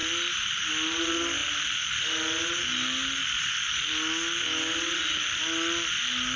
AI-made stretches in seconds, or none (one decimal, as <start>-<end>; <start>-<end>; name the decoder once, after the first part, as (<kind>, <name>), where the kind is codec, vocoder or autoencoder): 0.0-0.7 (vocoder, BigVGAN v2)